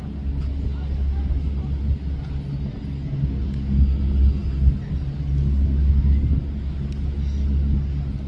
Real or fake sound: real